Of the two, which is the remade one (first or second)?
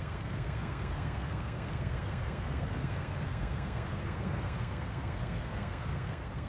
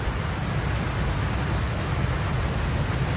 first